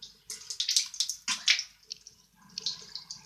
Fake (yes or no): no